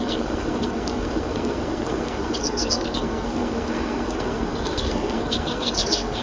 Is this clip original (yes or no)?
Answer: no